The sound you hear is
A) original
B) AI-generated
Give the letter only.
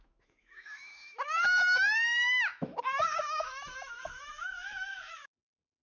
B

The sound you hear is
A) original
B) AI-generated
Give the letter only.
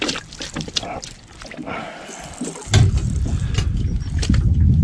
A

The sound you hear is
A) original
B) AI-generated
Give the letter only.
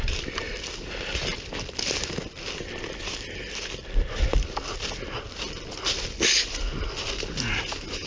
A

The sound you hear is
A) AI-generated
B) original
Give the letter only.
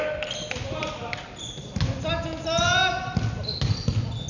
B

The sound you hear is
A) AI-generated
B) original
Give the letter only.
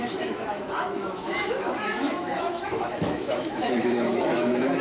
A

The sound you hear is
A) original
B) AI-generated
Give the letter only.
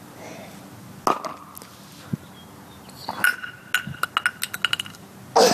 A